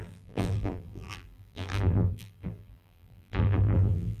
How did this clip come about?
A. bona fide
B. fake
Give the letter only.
B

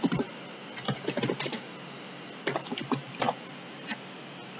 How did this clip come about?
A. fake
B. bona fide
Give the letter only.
B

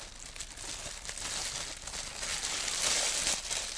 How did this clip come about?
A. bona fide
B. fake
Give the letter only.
A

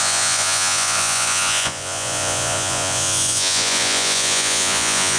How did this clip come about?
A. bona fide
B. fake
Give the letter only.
B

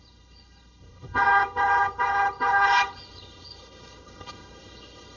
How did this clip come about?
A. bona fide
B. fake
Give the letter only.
B